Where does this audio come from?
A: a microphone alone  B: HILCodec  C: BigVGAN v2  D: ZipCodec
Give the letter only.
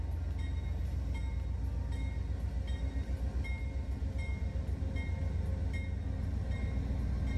A